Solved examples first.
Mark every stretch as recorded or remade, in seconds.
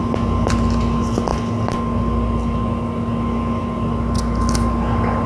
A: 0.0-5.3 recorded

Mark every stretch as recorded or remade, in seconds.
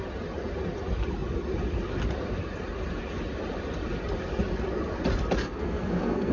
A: 0.0-5.4 recorded; 5.4-6.3 remade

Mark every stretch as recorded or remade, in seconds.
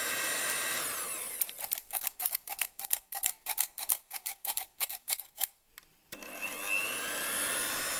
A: 0.0-1.8 recorded; 1.8-5.7 remade; 5.7-8.0 recorded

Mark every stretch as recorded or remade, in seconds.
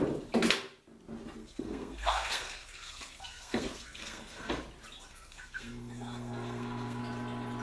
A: 0.0-1.4 recorded; 1.4-4.5 remade; 4.5-5.1 recorded; 5.1-7.0 remade; 7.0-7.6 recorded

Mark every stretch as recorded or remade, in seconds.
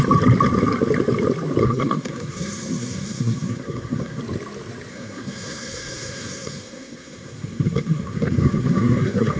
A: 0.0-1.6 recorded; 1.6-4.2 remade; 4.2-4.9 recorded; 4.9-9.4 remade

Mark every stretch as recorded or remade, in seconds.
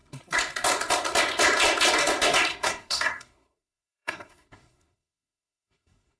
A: 0.0-2.5 recorded; 2.5-6.2 remade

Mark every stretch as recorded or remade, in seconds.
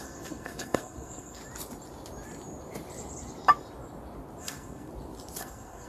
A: 0.0-1.4 remade; 1.4-4.4 recorded; 4.4-4.9 remade; 4.9-5.4 recorded; 5.4-5.9 remade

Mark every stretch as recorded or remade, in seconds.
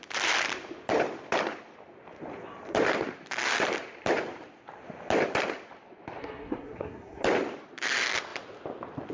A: 0.0-6.2 recorded; 6.2-7.2 remade; 7.2-9.1 recorded